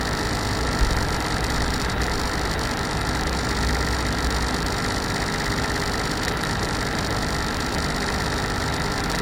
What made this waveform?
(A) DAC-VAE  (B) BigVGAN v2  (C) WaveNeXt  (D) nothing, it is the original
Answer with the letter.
D